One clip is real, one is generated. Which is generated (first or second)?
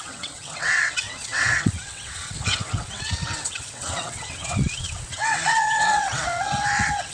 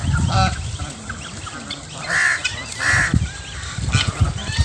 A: first